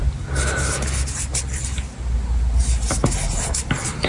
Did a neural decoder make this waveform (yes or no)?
no